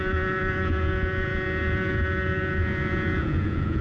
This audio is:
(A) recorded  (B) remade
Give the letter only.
B